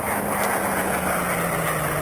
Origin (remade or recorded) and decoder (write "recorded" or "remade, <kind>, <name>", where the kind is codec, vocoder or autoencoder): recorded